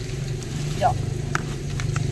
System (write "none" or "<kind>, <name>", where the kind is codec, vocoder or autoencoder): vocoder, BigVGAN v2